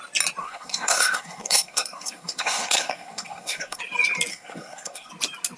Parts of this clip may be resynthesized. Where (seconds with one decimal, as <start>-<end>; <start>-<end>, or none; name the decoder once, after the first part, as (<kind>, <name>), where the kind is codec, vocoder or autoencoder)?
0.4-3.8 (codec, SNAC); 4.3-5.1